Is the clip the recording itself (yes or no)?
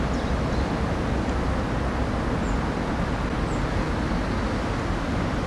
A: yes